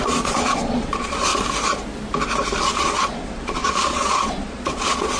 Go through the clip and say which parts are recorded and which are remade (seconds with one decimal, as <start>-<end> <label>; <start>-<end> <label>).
0.0-1.3 remade; 1.3-2.6 recorded; 2.6-5.2 remade

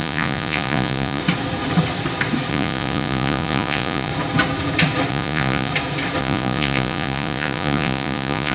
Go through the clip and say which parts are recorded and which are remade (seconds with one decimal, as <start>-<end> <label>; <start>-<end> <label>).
0.0-1.2 remade; 1.2-2.5 recorded; 2.5-4.1 remade; 4.1-5.1 recorded; 5.1-5.7 remade; 5.7-6.2 recorded; 6.2-8.5 remade

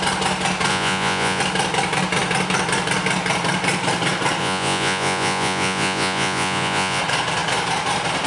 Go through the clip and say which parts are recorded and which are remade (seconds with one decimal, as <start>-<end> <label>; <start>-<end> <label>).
0.0-0.7 recorded; 0.7-1.4 remade; 1.4-4.4 recorded; 4.4-7.0 remade; 7.0-8.3 recorded

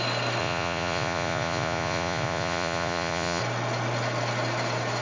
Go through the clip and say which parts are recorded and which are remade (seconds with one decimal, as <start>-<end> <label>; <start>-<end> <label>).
0.0-0.4 recorded; 0.4-3.4 remade; 3.4-5.0 recorded

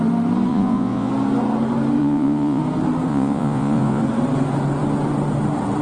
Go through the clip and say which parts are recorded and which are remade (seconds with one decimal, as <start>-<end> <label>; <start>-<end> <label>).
0.0-0.5 recorded; 0.5-1.1 remade; 1.1-2.0 recorded; 2.0-2.6 remade; 2.6-3.1 recorded; 3.1-4.0 remade; 4.0-5.8 recorded